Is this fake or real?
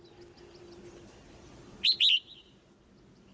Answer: real